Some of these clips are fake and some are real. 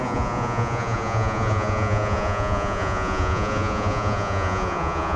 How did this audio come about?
fake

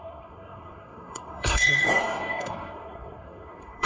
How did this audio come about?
fake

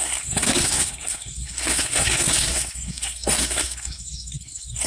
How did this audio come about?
fake